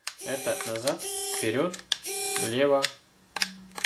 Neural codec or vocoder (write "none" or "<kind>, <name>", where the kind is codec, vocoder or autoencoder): autoencoder, DAC-VAE